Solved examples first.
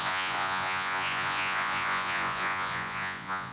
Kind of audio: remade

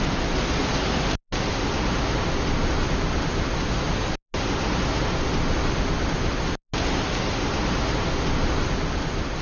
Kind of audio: recorded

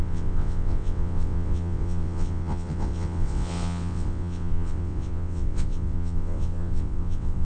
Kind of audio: remade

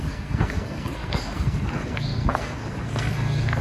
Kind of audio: remade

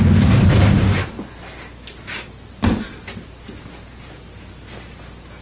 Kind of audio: recorded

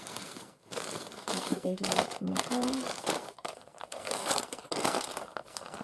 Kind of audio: remade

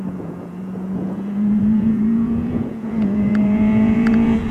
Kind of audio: remade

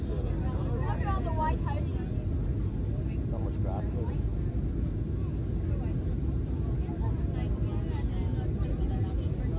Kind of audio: recorded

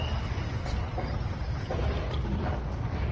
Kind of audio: recorded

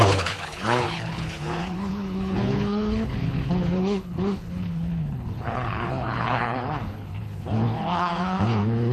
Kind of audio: remade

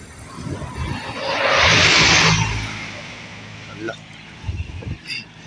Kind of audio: recorded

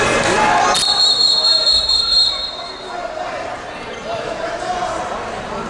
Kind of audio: remade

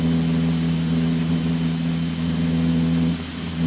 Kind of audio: recorded